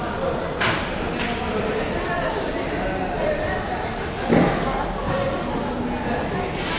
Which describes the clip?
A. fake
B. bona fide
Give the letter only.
B